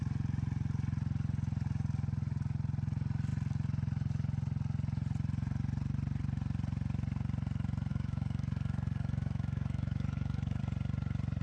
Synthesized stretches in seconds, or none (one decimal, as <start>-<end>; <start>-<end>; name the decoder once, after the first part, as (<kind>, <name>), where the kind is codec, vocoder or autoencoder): 7.9-10.6 (codec, DAC)